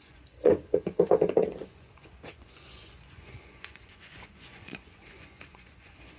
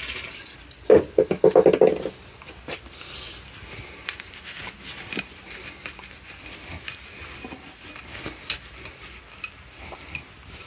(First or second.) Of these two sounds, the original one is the second